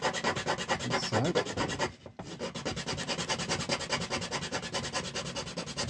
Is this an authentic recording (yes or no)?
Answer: yes